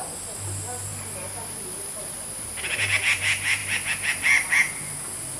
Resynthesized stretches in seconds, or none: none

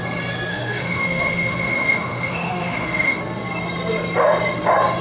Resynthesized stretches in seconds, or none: 0.5-3.2 (autoencoder, DAC-VAE)

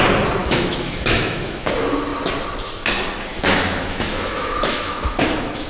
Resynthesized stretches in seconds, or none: 0.4-1.7 (autoencoder, DAC-VAE); 3.3-5.7

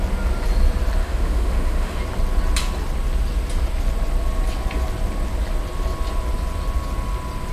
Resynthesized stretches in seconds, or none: 1.0-2.0 (autoencoder, DAC-VAE)

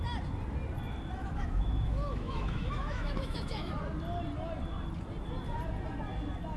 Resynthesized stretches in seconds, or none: 1.2-3.7 (autoencoder, DAC-VAE)

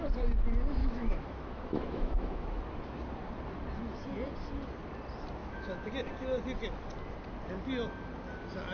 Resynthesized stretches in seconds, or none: 0.8-2.6 (autoencoder, DAC-VAE); 5.4-5.9